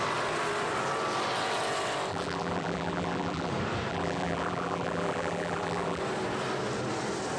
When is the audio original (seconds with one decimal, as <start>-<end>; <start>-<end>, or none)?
0.0-2.1; 3.5-3.9; 6.0-7.4